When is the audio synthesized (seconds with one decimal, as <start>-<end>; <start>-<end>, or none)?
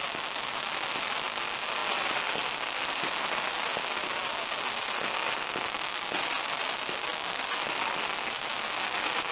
none